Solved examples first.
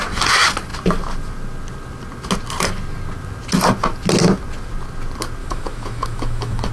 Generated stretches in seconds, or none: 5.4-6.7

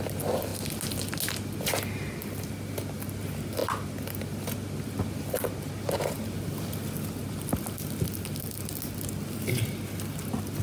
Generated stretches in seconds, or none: none